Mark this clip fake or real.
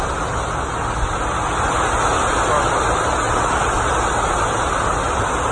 real